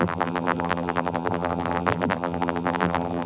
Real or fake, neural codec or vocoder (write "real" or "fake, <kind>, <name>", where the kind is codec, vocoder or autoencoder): fake, vocoder, BigVGAN v2